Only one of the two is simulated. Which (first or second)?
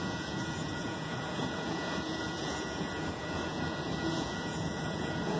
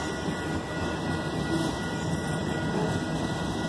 first